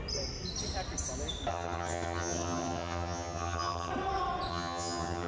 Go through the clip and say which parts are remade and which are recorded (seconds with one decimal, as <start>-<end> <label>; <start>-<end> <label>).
0.0-1.5 recorded; 1.5-3.9 remade; 3.9-4.5 recorded; 4.5-5.3 remade